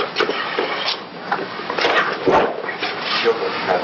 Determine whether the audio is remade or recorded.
recorded